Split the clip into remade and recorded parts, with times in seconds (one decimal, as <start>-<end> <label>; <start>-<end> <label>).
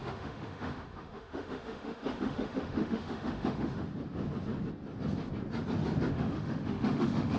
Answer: 0.0-3.9 remade; 3.9-6.1 recorded; 6.1-7.4 remade